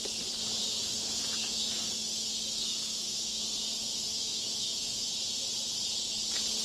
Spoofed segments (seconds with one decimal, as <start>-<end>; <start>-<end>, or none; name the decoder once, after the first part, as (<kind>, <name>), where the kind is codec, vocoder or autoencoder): 0.8-3.4 (autoencoder, DAC-VAE); 3.9-5.1

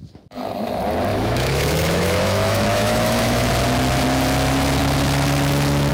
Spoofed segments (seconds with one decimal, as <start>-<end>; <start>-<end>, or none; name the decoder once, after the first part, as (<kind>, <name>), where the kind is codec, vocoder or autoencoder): 1.1-3.5 (autoencoder, DAC-VAE)